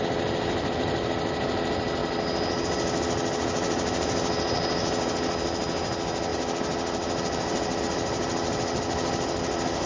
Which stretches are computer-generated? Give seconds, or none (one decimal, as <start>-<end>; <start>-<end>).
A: none